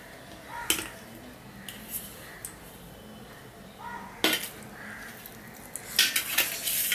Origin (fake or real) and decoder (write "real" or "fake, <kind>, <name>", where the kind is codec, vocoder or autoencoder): real